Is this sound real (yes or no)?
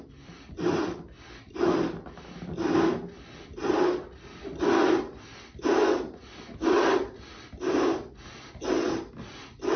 yes